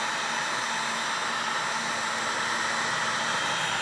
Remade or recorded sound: recorded